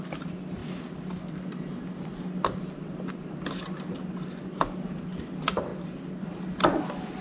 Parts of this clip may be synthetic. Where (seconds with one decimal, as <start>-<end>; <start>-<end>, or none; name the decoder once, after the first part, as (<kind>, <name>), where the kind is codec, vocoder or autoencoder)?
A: none